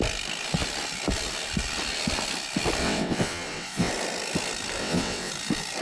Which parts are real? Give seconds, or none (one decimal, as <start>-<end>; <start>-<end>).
0.0-2.8; 3.9-4.8; 5.3-5.8